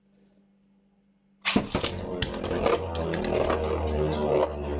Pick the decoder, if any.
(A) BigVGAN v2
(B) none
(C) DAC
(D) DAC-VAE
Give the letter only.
B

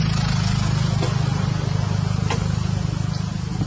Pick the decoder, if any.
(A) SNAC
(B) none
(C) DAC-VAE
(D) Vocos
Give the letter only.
B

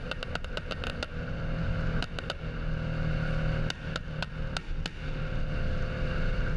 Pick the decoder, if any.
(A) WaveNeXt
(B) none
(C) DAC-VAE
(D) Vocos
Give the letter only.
B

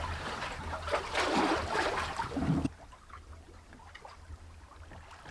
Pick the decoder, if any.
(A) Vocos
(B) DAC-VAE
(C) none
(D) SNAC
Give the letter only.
C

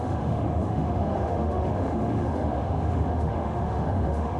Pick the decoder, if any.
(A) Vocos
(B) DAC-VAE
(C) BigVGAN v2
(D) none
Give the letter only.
B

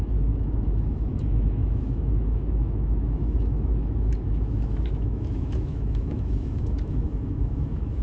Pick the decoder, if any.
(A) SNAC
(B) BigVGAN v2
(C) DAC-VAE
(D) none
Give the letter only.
C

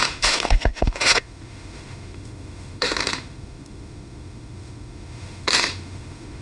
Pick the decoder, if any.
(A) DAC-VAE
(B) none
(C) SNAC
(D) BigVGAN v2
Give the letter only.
A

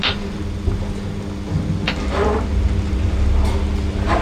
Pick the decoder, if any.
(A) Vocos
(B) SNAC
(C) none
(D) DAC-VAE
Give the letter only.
C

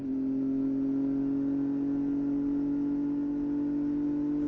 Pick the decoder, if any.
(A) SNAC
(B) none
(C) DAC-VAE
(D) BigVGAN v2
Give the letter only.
B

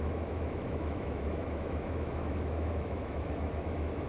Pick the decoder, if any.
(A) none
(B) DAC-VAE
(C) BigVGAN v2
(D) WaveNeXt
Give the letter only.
B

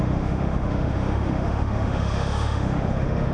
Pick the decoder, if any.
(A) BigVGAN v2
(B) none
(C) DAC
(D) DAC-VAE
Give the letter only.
D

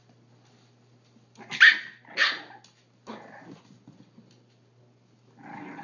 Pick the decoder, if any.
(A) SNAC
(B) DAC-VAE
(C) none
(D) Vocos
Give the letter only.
C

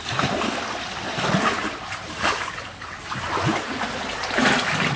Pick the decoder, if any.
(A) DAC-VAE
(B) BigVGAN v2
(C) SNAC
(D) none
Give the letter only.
D